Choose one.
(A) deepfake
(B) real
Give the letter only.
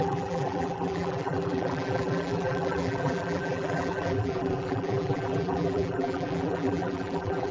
A